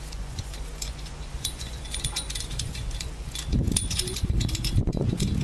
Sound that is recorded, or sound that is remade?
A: remade